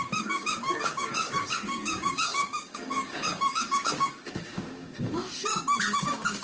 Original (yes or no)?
no